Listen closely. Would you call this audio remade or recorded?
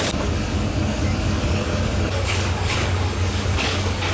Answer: remade